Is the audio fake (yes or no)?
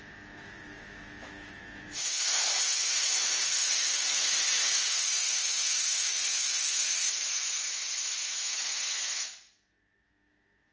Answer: yes